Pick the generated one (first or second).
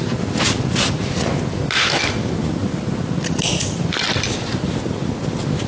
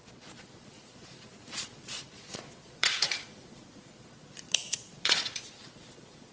second